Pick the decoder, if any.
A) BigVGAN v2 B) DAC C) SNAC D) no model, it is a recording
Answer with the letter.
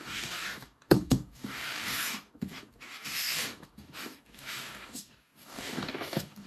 B